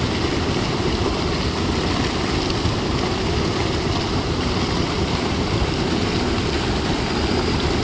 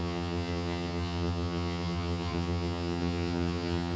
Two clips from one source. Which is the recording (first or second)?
first